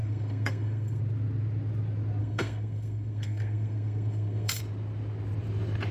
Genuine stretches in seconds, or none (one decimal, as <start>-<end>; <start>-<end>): 1.0-2.2; 4.6-5.9